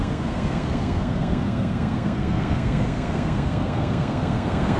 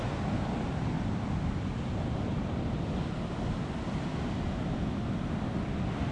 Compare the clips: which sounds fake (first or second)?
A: first